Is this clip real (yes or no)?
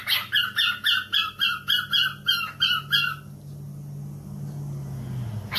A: yes